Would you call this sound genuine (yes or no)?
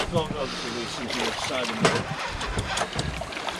yes